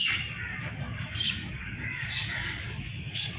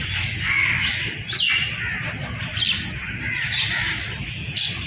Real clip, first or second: second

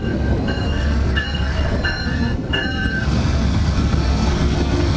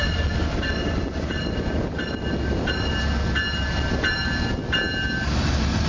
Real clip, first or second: second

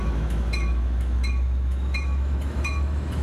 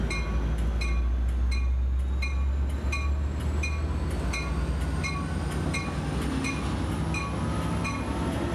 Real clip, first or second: second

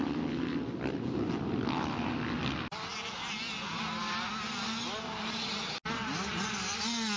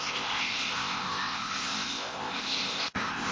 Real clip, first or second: first